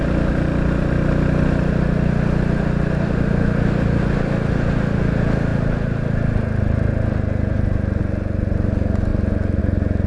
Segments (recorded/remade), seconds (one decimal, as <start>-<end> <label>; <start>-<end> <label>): 0.0-10.1 recorded